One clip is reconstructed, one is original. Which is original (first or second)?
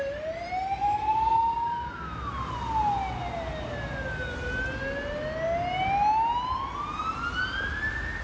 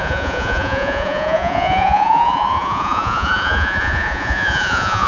first